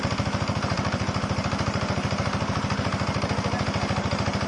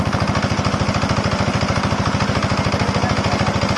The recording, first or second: second